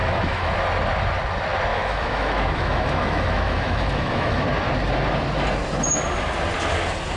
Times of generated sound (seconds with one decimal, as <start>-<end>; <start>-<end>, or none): 0.0-0.5; 1.7-4.4